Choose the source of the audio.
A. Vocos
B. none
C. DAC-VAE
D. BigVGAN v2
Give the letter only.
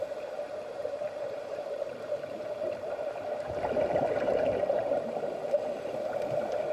D